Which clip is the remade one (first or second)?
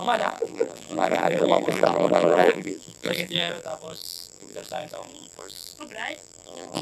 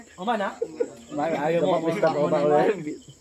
first